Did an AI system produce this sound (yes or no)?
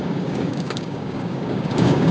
yes